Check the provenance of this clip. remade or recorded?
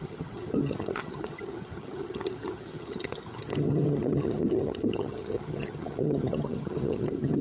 remade